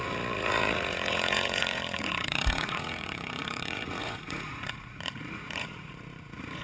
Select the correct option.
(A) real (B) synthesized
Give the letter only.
B